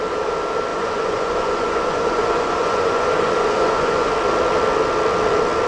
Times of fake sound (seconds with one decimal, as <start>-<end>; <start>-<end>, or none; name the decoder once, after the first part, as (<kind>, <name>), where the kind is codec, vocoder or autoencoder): 0.7-4.1 (vocoder, Vocos)